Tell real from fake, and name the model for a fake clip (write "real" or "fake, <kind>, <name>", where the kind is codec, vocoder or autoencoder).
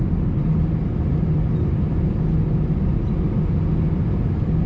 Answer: real